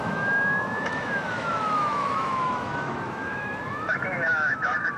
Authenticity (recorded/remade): remade